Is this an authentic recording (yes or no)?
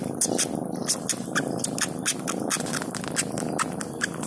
yes